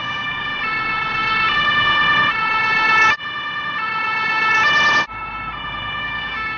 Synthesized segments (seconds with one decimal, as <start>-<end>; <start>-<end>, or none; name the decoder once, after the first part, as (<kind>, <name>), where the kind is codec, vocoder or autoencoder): 0.0-0.5 (codec, DAC); 1.5-2.0; 6.0-6.6